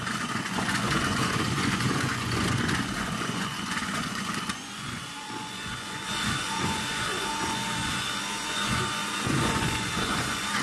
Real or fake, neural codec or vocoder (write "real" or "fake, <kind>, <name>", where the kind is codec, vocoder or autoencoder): fake, vocoder, Vocos